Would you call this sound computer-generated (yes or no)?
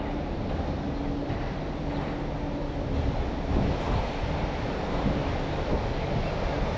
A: no